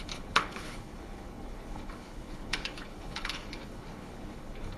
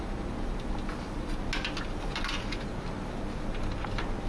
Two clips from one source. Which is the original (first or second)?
second